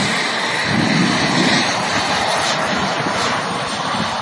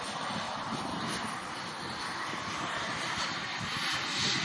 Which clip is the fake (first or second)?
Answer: first